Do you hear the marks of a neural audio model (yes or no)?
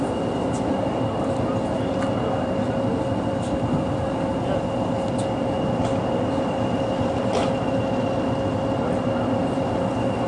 no